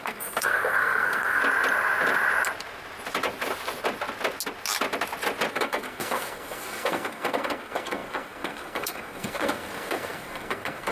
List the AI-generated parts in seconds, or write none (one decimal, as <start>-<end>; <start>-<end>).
0.0-1.4; 5.5-10.9